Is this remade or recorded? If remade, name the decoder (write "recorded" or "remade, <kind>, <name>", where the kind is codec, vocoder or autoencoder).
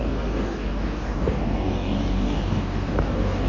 remade, codec, DAC